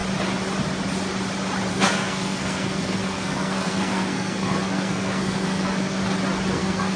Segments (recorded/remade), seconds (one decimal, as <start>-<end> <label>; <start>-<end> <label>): 0.0-1.7 recorded; 1.7-6.0 remade; 6.0-6.5 recorded; 6.5-7.0 remade